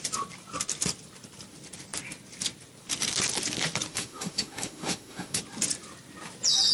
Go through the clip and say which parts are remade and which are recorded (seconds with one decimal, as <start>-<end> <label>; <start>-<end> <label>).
0.0-3.9 recorded; 3.9-5.4 remade; 5.4-6.7 recorded

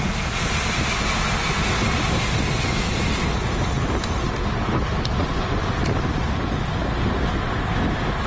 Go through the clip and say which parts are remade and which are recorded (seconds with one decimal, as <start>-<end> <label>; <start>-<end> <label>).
0.0-5.2 recorded; 5.2-5.7 remade; 5.7-8.3 recorded